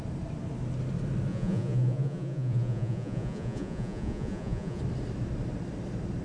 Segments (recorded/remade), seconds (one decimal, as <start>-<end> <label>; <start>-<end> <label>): 0.0-1.3 recorded; 1.3-4.8 remade; 4.8-6.2 recorded